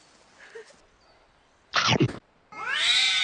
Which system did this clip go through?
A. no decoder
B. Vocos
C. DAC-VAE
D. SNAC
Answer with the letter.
A